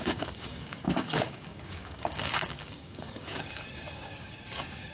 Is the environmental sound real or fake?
fake